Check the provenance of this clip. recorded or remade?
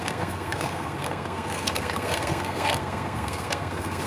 remade